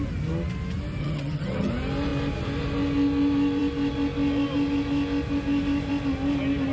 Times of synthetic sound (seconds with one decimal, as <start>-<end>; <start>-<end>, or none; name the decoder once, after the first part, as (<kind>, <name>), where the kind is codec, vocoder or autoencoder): 1.0-1.7 (vocoder, HiFi-GAN)